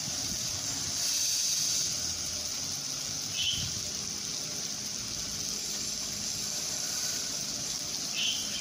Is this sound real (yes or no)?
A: yes